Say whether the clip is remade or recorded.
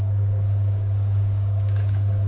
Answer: remade